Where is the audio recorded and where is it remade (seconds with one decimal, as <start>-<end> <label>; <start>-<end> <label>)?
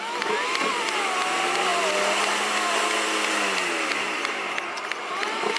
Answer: 0.0-5.6 recorded